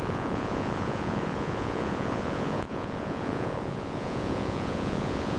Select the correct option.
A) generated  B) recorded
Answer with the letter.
A